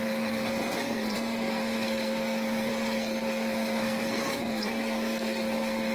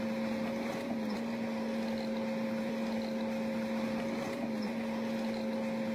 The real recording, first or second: second